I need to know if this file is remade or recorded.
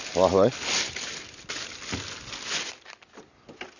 recorded